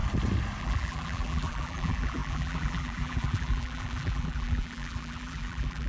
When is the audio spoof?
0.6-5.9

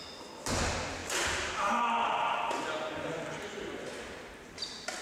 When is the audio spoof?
1.0-2.5

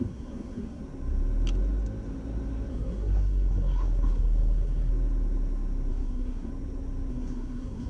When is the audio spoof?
0.0-0.8; 2.7-4.9; 5.9-6.5; 7.1-7.9

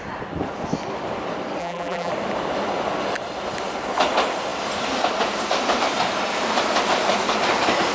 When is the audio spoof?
1.6-2.1